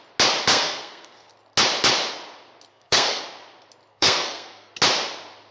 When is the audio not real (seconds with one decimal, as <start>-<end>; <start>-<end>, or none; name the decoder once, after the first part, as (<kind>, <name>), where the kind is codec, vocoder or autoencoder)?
0.5-1.3 (codec, SNAC); 2.7-3.2; 3.9-4.7